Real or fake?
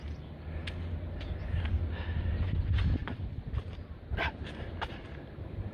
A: real